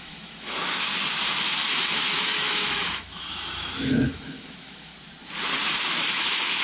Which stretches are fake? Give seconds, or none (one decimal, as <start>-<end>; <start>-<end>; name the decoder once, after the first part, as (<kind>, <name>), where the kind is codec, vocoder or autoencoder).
0.0-0.9 (autoencoder, DAC-VAE); 1.7-4.9; 5.9-6.6